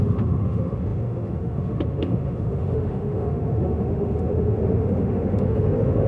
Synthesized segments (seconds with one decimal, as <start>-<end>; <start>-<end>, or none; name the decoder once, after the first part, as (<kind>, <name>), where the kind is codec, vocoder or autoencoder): 0.0-6.1 (autoencoder, DAC-VAE)